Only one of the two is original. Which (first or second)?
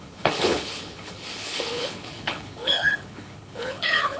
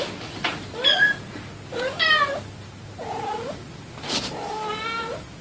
second